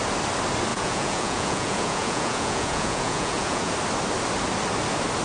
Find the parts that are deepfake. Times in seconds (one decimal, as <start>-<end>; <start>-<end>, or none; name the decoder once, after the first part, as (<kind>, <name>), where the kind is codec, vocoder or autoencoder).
0.7-3.7 (vocoder, Vocos)